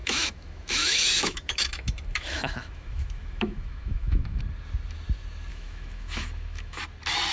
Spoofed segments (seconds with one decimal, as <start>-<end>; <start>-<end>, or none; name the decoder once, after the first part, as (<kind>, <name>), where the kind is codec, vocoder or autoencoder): 0.0-4.4 (autoencoder, DAC-VAE); 5.5-6.8